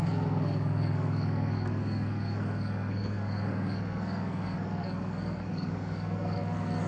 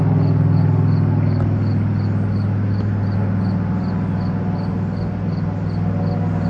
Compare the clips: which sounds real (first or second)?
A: second